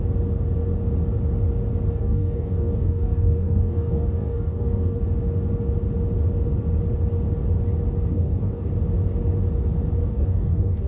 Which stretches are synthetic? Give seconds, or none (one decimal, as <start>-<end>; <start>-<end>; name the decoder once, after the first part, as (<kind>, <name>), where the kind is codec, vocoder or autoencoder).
1.9-5.0 (codec, DAC); 8.1-8.7; 10.1-10.9